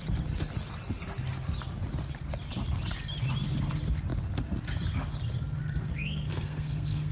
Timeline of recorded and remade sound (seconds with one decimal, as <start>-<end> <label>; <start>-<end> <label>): 0.0-5.6 recorded; 5.6-7.1 remade